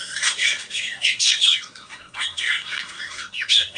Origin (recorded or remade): remade